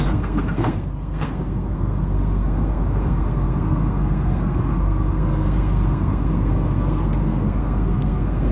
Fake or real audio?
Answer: fake